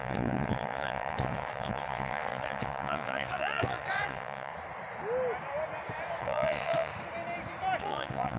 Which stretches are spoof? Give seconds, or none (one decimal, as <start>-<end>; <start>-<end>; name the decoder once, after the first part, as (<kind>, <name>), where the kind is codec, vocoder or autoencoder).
0.0-4.5 (vocoder, WaveNeXt); 6.2-6.9; 7.8-8.4